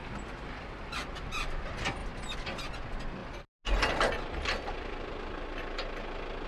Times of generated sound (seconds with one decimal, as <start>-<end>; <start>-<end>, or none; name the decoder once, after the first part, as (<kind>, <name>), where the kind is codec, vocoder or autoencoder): 0.0-0.9 (vocoder, BigVGAN v2); 2.0-2.7